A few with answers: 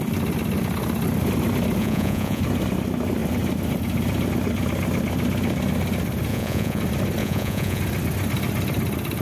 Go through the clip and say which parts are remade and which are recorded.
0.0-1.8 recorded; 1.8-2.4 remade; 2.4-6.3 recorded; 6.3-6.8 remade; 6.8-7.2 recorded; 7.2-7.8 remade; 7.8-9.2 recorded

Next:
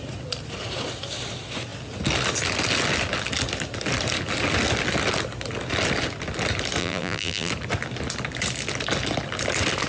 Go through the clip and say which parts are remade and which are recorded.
0.0-6.8 recorded; 6.8-7.5 remade; 7.5-9.9 recorded